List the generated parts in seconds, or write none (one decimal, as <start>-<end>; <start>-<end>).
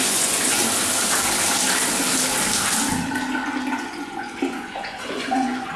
0.0-0.6; 3.7-5.8